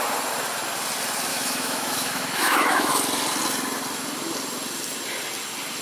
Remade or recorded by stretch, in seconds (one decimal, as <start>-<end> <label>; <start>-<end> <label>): 0.0-1.3 recorded; 1.3-2.9 remade; 2.9-5.8 recorded